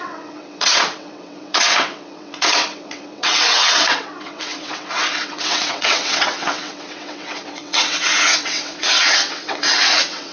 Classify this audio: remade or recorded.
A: remade